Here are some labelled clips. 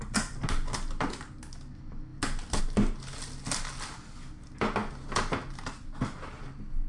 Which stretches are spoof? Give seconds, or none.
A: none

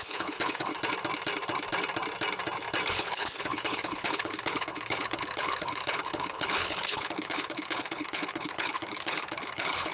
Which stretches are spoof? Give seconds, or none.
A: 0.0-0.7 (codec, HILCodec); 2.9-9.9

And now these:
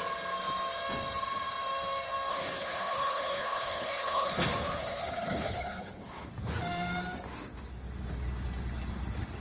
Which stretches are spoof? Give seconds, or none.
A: 2.3-6.3 (codec, HILCodec)